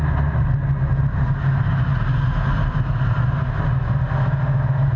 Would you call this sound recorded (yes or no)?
yes